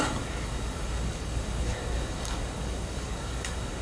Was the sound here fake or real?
fake